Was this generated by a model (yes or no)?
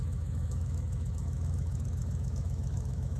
yes